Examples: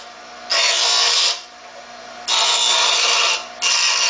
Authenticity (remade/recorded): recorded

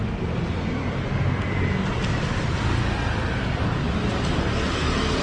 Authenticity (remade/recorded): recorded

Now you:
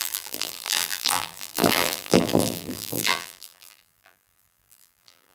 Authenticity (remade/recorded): remade